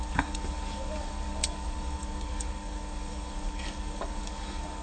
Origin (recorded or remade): remade